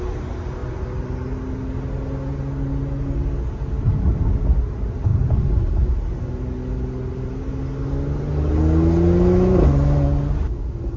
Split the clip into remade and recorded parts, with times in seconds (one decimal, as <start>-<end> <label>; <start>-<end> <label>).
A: 0.0-11.0 recorded